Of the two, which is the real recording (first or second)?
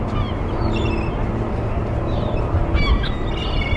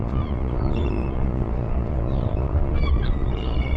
first